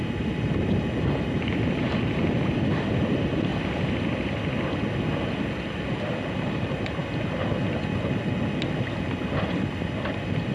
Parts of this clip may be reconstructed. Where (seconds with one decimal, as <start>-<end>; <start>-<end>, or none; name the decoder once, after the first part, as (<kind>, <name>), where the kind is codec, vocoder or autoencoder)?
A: 0.0-3.5 (vocoder, BigVGAN v2); 5.9-7.0; 9.7-10.5